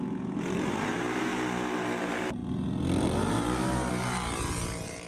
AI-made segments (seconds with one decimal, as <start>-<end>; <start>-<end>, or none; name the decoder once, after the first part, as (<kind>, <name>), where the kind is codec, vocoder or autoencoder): 0.0-1.3 (vocoder, BigVGAN v2); 2.0-2.4; 3.9-5.1